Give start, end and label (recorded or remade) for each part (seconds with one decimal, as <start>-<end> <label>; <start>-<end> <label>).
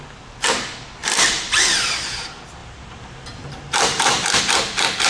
0.0-1.0 recorded; 1.0-2.2 remade; 2.2-2.6 recorded; 2.6-4.4 remade; 4.4-5.1 recorded